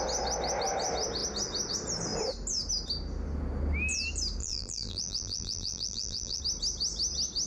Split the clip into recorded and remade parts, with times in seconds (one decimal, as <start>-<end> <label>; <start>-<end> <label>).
0.0-4.4 recorded; 4.4-6.4 remade; 6.4-7.5 recorded